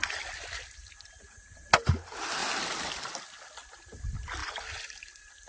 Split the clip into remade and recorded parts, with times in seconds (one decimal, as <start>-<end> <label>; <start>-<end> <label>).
0.0-2.4 recorded; 2.4-3.2 remade; 3.2-4.4 recorded; 4.4-5.0 remade; 5.0-5.5 recorded